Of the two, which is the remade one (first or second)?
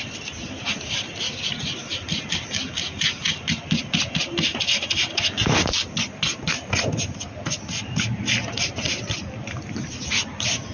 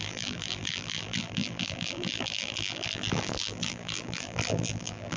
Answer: second